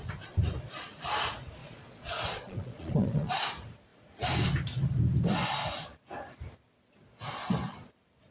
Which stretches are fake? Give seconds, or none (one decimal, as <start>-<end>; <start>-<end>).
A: 1.6-3.3